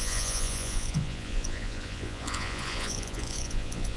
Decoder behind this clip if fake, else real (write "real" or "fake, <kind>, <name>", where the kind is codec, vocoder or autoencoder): fake, vocoder, Vocos